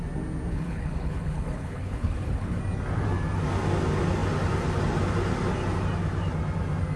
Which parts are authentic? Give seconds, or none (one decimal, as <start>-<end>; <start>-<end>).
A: 0.0-0.5; 2.6-7.0